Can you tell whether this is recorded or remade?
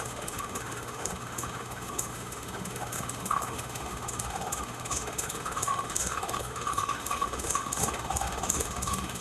remade